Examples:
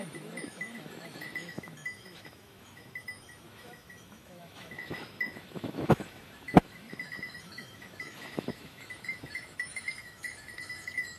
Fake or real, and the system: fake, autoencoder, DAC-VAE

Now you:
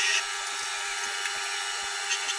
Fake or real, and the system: real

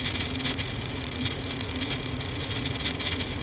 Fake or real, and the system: fake, vocoder, Vocos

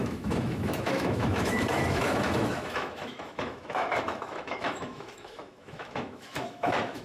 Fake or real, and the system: fake, autoencoder, DAC-VAE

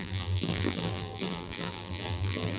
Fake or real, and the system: fake, vocoder, BigVGAN v2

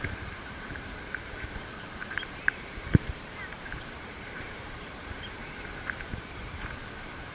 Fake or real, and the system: fake, vocoder, BigVGAN v2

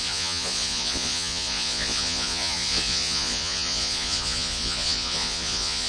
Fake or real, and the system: fake, vocoder, Vocos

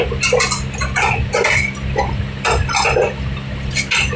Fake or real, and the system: real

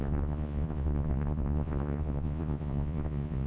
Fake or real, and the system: fake, vocoder, Vocos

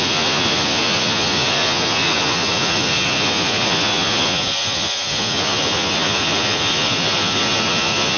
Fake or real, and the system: fake, vocoder, Vocos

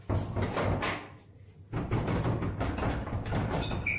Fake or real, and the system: real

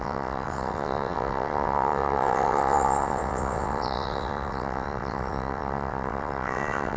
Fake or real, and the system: fake, vocoder, WaveNeXt